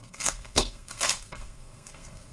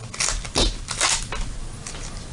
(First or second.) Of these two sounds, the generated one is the first